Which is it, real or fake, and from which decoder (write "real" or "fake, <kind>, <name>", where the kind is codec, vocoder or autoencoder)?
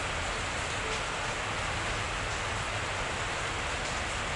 real